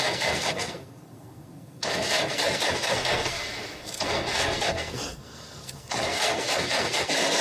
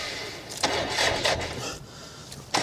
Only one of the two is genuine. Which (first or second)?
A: second